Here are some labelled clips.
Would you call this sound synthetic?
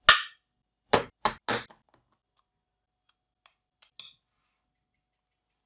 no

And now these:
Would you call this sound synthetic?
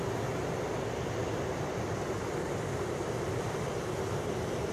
no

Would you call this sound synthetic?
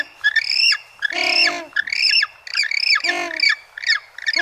no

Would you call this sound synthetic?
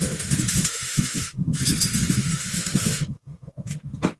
yes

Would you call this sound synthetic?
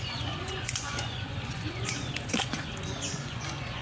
yes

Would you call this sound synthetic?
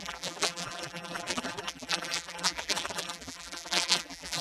yes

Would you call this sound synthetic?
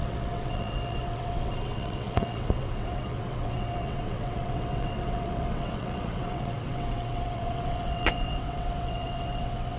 yes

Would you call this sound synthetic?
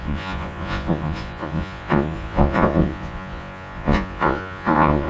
yes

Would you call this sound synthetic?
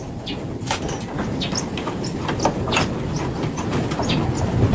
no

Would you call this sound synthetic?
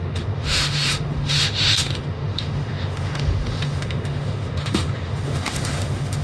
yes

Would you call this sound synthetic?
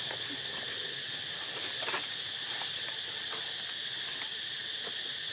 no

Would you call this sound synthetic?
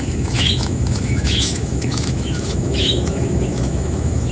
yes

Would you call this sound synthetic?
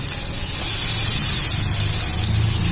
no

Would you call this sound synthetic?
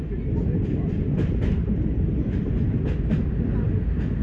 no